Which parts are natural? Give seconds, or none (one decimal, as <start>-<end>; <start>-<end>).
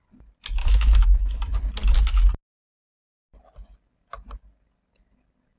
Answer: 0.0-0.6; 1.3-5.6